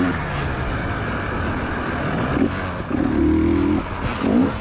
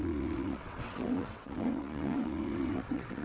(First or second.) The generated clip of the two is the second